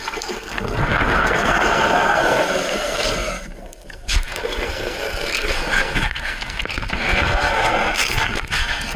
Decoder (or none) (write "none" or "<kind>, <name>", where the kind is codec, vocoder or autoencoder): codec, SNAC